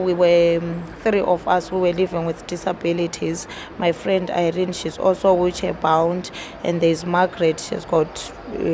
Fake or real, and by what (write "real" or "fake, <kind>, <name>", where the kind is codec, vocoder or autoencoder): real